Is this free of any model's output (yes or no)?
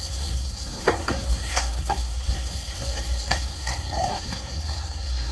no